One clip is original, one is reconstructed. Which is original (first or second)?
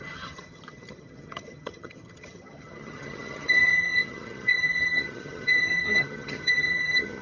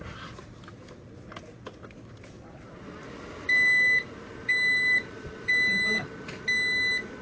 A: second